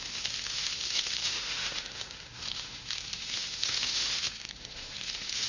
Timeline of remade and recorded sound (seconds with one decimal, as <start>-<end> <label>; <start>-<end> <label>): 0.0-5.5 remade